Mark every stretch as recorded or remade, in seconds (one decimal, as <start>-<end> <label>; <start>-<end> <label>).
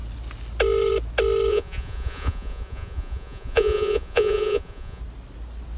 0.0-1.5 recorded; 1.5-5.0 remade; 5.0-5.8 recorded